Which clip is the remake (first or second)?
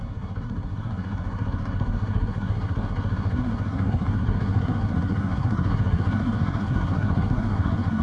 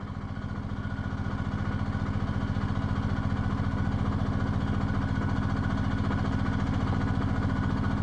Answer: first